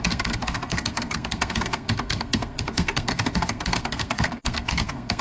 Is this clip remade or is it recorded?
remade